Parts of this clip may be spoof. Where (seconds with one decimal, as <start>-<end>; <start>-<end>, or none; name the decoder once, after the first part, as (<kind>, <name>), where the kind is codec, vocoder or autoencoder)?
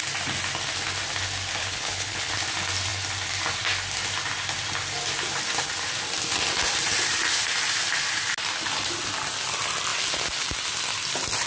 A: 1.6-2.3 (codec, HILCodec)